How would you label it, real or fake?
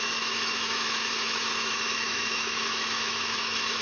fake